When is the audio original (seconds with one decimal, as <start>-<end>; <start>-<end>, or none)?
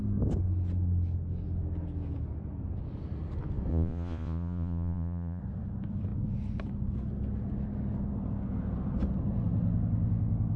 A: 0.0-3.7; 5.4-10.6